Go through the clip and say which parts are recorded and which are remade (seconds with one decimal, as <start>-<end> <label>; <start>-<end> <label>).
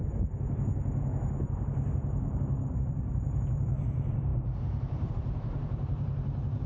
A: 0.0-6.7 remade